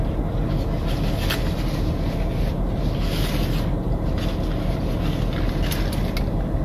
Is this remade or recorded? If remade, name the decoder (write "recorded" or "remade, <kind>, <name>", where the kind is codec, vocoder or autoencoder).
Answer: recorded